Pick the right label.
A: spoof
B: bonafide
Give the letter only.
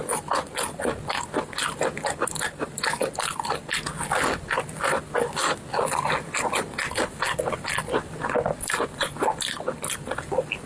B